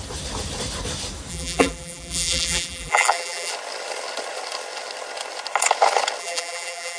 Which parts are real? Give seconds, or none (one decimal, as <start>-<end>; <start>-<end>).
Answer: 0.0-1.3; 3.5-6.2